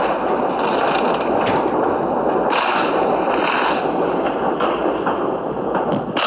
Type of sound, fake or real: real